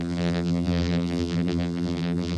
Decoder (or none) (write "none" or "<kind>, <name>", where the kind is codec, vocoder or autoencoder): vocoder, BigVGAN v2